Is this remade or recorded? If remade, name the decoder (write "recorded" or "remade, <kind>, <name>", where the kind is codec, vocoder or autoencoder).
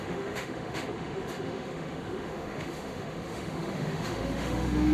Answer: remade, autoencoder, DAC-VAE